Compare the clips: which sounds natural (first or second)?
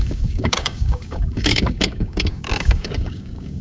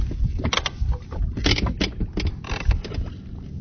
second